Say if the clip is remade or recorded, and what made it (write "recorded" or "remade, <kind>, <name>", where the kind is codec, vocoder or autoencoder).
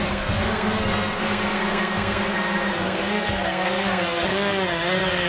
remade, codec, SNAC